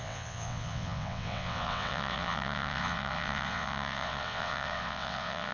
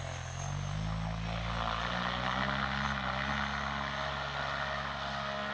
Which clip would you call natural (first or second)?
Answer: second